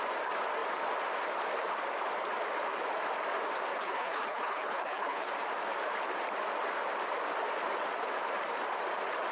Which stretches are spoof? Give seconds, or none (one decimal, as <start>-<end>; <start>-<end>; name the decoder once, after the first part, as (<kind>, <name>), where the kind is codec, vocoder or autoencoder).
3.7-5.3 (codec, HILCodec)